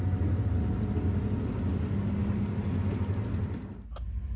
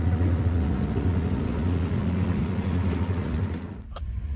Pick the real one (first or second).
first